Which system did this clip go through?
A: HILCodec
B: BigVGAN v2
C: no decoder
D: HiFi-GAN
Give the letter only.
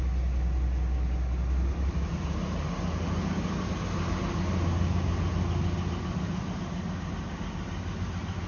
C